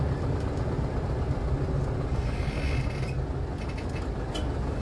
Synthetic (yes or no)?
no